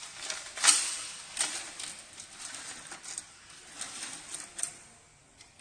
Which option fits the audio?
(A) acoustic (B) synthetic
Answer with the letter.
A